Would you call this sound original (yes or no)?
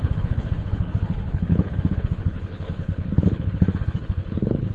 no